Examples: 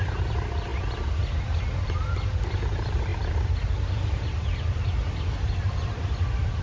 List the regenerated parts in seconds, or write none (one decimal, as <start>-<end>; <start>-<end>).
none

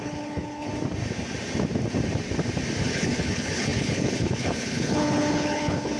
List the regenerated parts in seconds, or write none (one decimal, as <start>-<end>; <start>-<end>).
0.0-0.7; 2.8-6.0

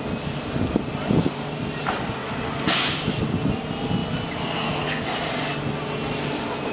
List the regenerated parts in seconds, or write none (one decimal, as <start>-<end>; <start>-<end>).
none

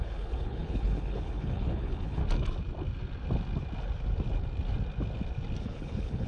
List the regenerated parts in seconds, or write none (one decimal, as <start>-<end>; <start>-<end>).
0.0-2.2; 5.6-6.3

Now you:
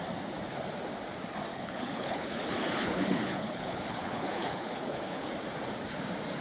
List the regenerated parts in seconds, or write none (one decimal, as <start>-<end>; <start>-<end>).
1.5-5.3